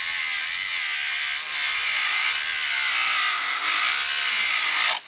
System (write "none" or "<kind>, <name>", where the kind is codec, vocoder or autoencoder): none